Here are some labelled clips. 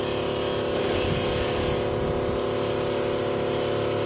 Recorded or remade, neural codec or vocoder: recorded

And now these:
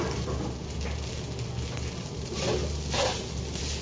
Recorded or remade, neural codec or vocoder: recorded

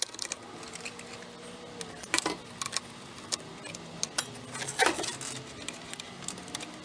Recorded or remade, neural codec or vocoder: recorded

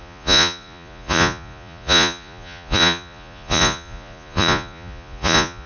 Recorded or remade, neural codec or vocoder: remade, vocoder, Vocos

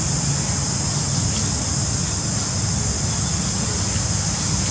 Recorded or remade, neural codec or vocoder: recorded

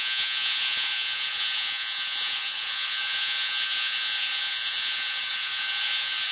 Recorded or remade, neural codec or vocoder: remade, vocoder, Vocos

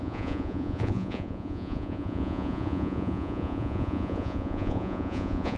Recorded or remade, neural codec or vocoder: remade, vocoder, Vocos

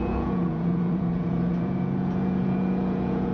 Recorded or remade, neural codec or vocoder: remade, vocoder, Vocos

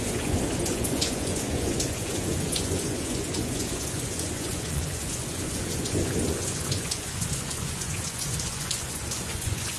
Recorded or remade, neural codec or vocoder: remade, vocoder, Vocos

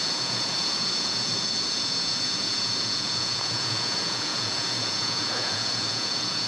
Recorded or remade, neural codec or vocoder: remade, vocoder, Vocos